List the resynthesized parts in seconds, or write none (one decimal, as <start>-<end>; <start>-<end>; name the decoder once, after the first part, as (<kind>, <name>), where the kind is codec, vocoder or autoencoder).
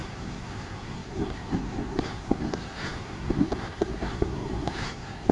0.0-5.3 (codec, SNAC)